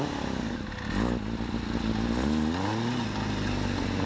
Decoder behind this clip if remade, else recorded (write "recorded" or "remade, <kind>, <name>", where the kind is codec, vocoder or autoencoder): recorded